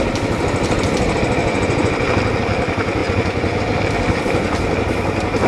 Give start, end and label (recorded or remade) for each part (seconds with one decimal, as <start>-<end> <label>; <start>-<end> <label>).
0.0-1.4 recorded; 1.4-1.9 remade; 1.9-3.0 recorded; 3.0-3.6 remade; 3.6-5.5 recorded